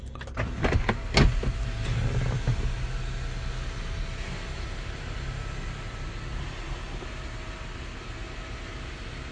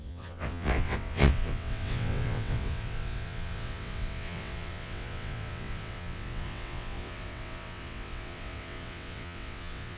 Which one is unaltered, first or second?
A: first